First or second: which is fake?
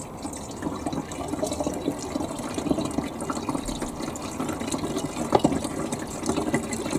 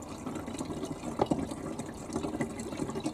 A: second